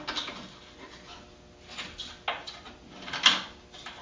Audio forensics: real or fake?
real